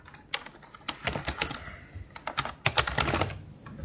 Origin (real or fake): real